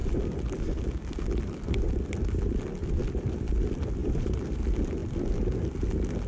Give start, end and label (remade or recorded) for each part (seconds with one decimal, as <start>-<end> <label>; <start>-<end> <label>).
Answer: 0.0-4.0 recorded; 4.0-4.6 remade; 4.6-6.3 recorded

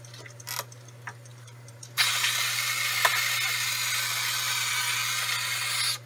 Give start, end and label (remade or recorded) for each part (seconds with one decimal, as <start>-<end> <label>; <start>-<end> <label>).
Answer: 0.0-1.3 recorded; 1.3-2.1 remade; 2.1-6.1 recorded